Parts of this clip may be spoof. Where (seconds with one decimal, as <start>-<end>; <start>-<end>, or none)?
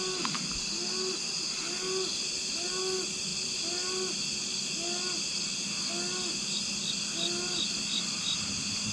none